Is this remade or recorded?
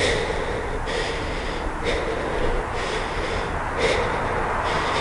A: recorded